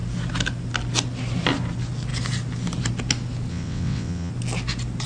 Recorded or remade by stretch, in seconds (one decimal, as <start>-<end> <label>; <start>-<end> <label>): 0.0-3.5 recorded; 3.5-4.3 remade; 4.3-5.1 recorded